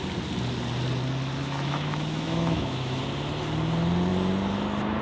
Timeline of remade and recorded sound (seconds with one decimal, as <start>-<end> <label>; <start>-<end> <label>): 0.0-1.4 recorded; 1.4-3.0 remade; 3.0-5.0 recorded